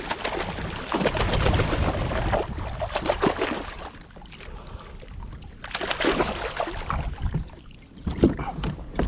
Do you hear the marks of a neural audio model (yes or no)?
no